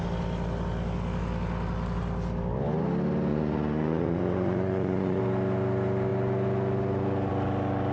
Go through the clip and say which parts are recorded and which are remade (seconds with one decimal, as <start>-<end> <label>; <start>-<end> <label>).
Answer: 0.0-3.3 recorded; 3.3-5.2 remade; 5.2-7.9 recorded